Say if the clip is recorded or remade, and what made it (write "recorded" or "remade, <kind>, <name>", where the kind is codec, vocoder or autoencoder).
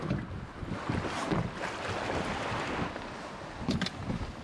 recorded